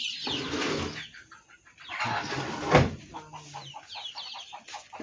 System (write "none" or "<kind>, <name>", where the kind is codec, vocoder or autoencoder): none